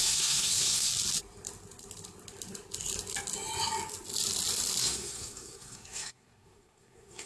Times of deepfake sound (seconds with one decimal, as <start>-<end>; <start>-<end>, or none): 0.0-0.9; 4.8-7.3